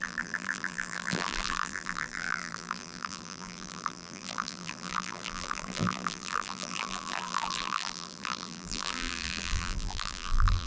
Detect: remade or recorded remade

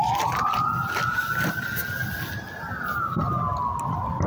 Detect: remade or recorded recorded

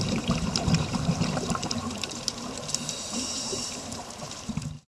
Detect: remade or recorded remade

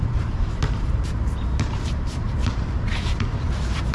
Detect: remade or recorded remade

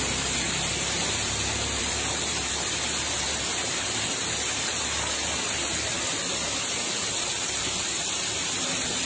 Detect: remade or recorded remade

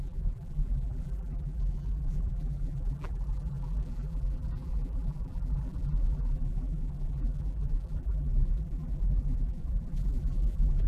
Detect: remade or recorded remade